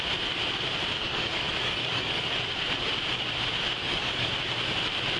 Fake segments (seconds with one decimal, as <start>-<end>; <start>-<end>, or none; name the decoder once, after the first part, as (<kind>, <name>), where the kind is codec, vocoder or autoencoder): 1.0-2.3 (codec, DAC); 3.8-4.3